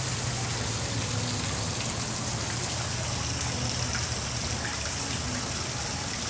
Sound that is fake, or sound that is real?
real